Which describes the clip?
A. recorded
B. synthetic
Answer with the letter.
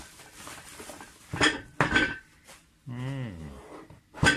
A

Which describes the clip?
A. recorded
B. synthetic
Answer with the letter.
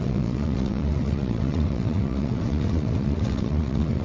B